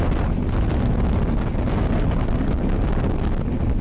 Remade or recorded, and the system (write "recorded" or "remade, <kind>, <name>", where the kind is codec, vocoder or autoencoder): recorded